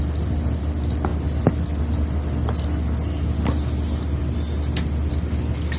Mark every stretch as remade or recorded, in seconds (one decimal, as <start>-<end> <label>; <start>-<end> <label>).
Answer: 0.0-5.8 recorded